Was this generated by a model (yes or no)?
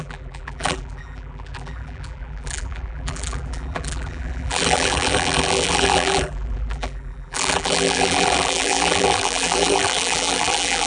yes